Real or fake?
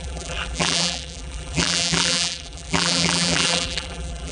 fake